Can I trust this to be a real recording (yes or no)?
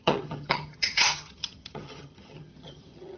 no